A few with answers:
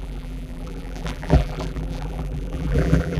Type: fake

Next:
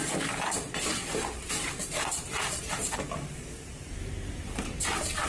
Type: fake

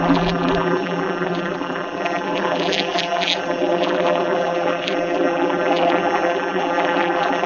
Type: fake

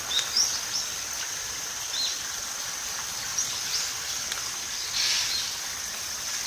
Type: real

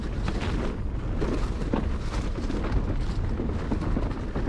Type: real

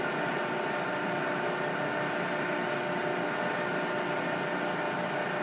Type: real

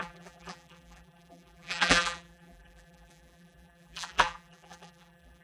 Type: fake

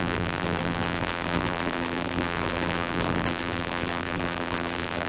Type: fake